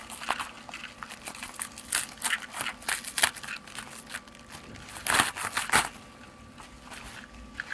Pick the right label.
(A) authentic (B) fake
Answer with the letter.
A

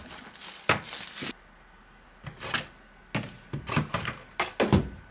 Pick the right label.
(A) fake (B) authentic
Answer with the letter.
B